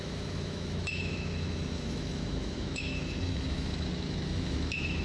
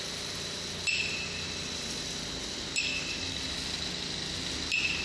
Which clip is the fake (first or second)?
first